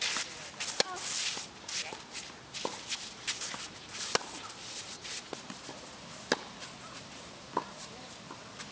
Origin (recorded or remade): recorded